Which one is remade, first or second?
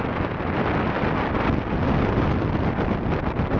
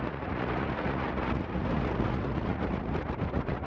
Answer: second